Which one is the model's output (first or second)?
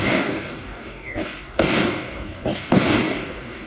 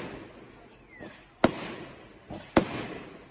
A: first